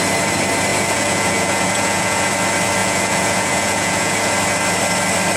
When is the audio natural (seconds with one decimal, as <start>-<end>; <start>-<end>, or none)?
0.0-0.7; 2.3-2.8; 4.3-5.4